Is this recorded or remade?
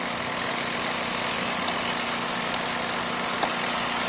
recorded